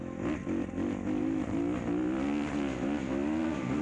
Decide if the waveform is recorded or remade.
recorded